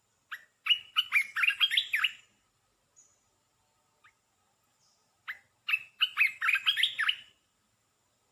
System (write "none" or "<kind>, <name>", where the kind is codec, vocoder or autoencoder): none